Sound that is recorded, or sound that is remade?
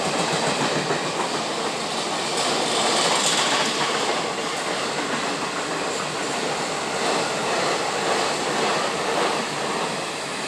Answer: recorded